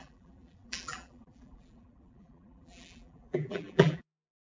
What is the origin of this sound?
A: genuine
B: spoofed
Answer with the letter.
B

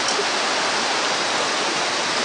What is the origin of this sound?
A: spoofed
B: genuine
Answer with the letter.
B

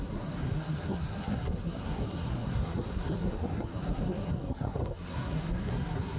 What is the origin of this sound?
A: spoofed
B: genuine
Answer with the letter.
A